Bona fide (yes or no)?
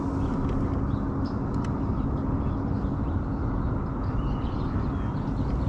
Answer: yes